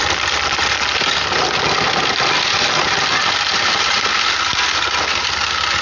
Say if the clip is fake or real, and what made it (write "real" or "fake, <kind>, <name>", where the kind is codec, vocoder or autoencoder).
real